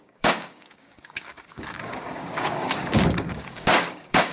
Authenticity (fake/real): fake